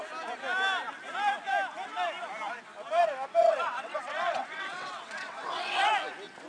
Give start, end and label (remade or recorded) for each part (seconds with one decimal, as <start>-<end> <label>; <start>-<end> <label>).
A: 0.0-3.4 recorded; 3.4-5.9 remade; 5.9-6.5 recorded